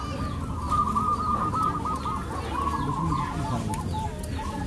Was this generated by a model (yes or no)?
no